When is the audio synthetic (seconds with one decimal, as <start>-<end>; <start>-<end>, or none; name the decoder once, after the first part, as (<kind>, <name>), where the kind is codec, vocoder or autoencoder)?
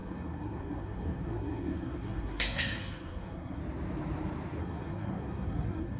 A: 0.0-3.6 (codec, SNAC); 4.6-6.0